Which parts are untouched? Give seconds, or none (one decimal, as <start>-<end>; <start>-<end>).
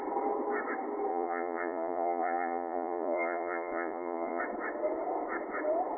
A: 0.0-1.1; 4.4-6.0